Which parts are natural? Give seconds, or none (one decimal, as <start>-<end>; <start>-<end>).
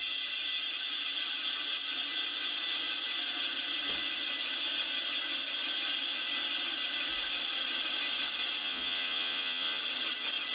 0.0-8.6; 9.8-10.5